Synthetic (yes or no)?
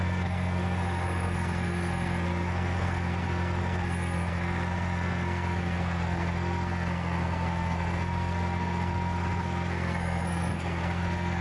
yes